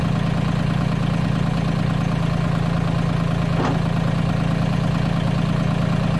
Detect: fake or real real